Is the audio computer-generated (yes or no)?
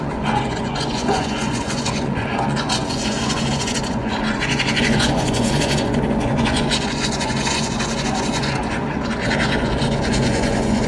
yes